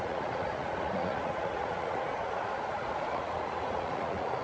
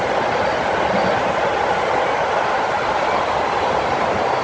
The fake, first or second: first